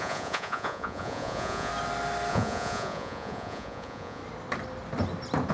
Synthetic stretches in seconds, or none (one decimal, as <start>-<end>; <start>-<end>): 0.0-1.7; 2.3-4.2